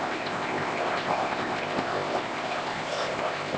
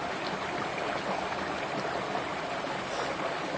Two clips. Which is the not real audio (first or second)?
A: first